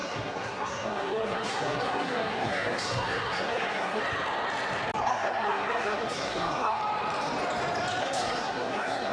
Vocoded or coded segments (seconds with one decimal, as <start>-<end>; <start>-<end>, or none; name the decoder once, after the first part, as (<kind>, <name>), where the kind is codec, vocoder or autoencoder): 0.0-4.0 (codec, SNAC); 5.0-6.8; 8.0-9.1